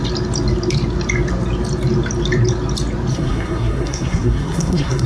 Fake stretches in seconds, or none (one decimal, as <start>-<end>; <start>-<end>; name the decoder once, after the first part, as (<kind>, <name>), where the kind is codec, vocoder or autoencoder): 3.1-5.1 (codec, SNAC)